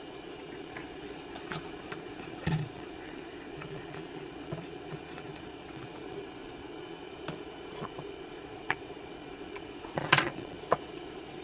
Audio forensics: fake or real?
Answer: fake